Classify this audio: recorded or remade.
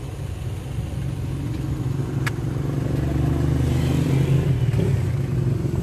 recorded